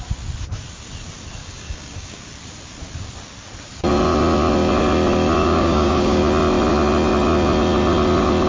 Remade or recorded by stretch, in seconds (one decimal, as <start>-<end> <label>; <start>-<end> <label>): 0.0-1.4 recorded; 1.4-2.2 remade; 2.2-5.4 recorded; 5.4-6.2 remade; 6.2-8.5 recorded